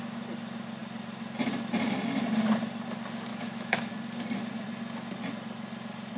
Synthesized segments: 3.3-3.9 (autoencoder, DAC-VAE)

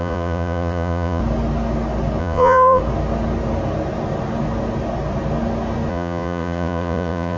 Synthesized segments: 0.0-1.2 (vocoder, Vocos); 2.2-2.8; 5.9-7.4

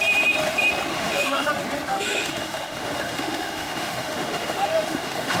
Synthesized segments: 0.9-1.5 (autoencoder, DAC-VAE); 1.9-5.4

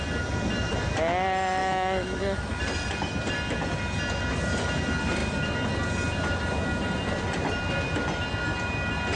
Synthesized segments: 1.6-2.6 (autoencoder, DAC-VAE)

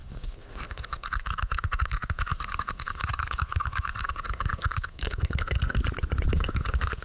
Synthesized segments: 0.0-5.8 (codec, SNAC); 6.3-7.0

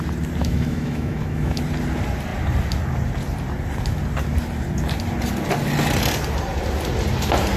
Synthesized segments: 0.4-1.6 (autoencoder, DAC-VAE)